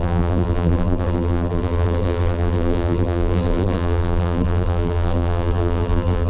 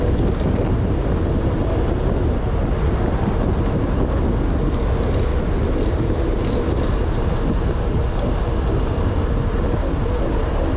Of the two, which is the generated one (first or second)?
first